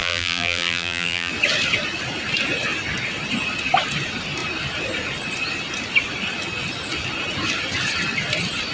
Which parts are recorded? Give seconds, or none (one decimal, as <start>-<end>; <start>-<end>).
1.3-8.7